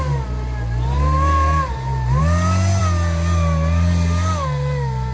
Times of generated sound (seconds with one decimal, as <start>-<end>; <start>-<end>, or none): none